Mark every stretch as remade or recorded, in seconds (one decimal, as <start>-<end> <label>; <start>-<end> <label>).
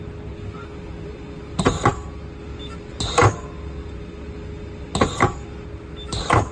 0.0-6.5 recorded